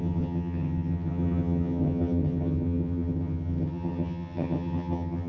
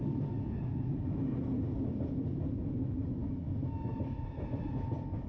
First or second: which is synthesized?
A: first